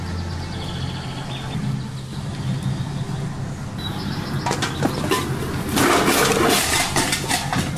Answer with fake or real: real